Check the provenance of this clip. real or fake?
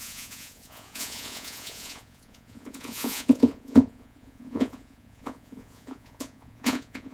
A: fake